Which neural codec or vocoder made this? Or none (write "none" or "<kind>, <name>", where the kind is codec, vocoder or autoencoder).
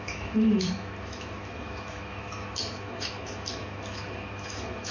autoencoder, DAC-VAE